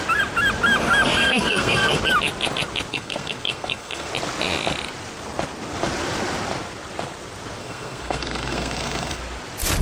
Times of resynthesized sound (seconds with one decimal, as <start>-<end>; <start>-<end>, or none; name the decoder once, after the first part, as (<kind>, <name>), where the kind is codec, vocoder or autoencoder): 1.2-2.0 (codec, SNAC); 2.9-4.1; 7.6-9.2